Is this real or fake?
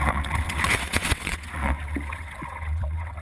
fake